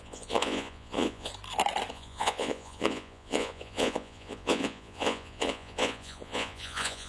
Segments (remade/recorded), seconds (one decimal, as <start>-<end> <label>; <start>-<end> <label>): 0.0-1.3 remade; 1.3-1.9 recorded; 1.9-7.1 remade